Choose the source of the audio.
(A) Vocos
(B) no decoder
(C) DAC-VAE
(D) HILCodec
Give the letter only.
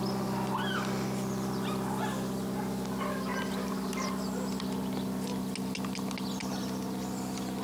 B